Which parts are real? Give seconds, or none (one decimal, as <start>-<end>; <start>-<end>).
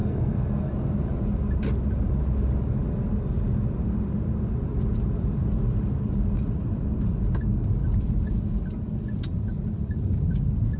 0.7-10.8